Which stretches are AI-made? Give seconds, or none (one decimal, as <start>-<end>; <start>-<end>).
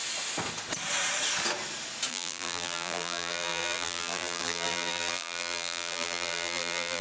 2.1-7.0